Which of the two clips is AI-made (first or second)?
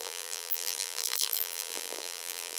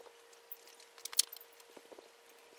first